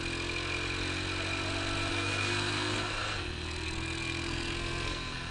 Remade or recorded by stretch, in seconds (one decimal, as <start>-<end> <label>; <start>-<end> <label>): 0.0-1.9 recorded; 1.9-5.3 remade